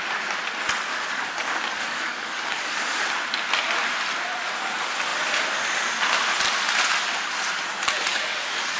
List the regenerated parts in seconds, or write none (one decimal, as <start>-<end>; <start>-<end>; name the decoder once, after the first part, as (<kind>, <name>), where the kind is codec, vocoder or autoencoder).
0.9-2.7 (codec, DAC); 8.1-8.8